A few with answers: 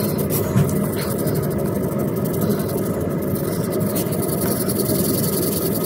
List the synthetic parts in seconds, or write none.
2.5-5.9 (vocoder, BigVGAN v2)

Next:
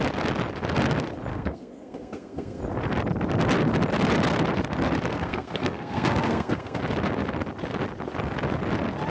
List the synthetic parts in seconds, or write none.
1.3-2.6 (codec, SNAC); 5.1-6.8

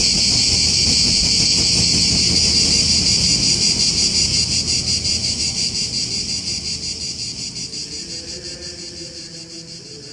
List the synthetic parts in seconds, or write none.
5.2-5.7 (autoencoder, DAC-VAE)

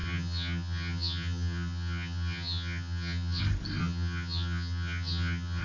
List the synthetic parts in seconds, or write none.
0.0-3.4 (vocoder, HiFi-GAN); 3.8-5.6

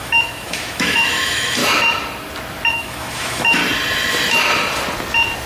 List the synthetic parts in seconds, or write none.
0.0-1.6 (autoencoder, DAC-VAE); 2.7-3.6

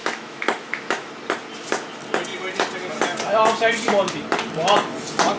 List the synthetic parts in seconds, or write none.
0.0-1.1 (autoencoder, DAC-VAE)